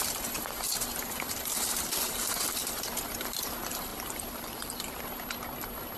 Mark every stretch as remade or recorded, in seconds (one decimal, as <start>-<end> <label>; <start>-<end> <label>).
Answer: 0.0-3.9 recorded; 3.9-5.0 remade; 5.0-6.0 recorded